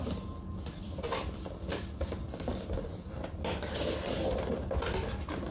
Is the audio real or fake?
real